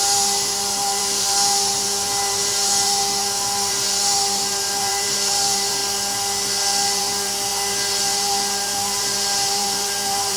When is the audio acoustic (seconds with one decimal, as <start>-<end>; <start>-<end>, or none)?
5.8-7.0; 7.5-8.0